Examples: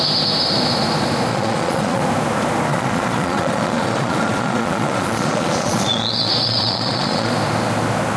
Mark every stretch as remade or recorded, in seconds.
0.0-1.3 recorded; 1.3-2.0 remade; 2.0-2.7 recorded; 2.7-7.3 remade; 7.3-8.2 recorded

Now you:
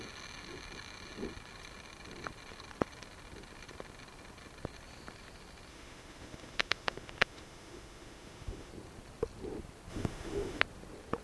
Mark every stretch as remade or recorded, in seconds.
0.0-5.7 recorded; 5.7-8.7 remade; 8.7-9.9 recorded; 9.9-10.6 remade; 10.6-11.2 recorded

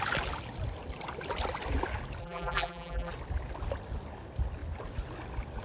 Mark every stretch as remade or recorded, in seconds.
0.0-2.2 recorded; 2.2-3.1 remade; 3.1-5.6 recorded

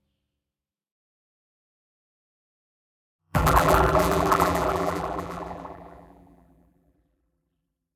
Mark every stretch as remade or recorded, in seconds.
0.0-3.2 recorded; 3.2-8.0 remade